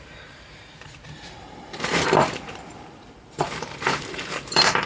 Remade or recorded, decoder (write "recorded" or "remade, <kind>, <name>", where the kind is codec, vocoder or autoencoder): remade, vocoder, BigVGAN v2